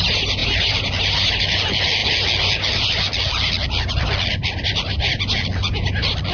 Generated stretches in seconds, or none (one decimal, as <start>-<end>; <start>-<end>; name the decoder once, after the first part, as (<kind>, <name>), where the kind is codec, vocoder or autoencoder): none